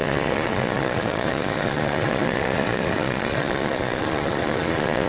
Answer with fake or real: fake